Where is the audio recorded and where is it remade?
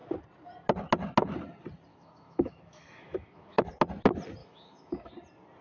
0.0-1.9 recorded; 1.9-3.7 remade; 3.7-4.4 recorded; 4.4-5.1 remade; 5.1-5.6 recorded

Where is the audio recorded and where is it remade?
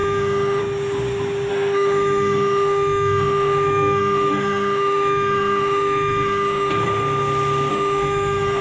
0.0-0.6 remade; 0.6-1.5 recorded; 1.5-6.7 remade; 6.7-7.7 recorded; 7.7-8.6 remade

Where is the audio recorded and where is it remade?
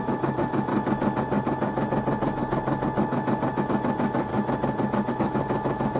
0.0-0.7 remade; 0.7-3.6 recorded; 3.6-4.3 remade; 4.3-5.1 recorded; 5.1-6.0 remade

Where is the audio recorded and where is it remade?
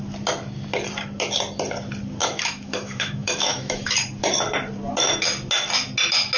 0.0-2.2 recorded; 2.2-3.9 remade; 3.9-6.4 recorded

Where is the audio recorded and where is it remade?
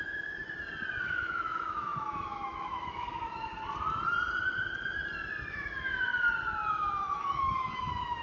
0.0-0.4 remade; 0.4-1.0 recorded; 1.0-3.5 remade; 3.5-5.5 recorded; 5.5-6.1 remade; 6.1-6.7 recorded; 6.7-8.2 remade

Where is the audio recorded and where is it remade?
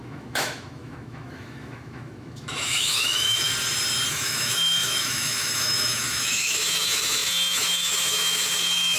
0.0-3.5 remade; 3.5-4.1 recorded; 4.1-9.0 remade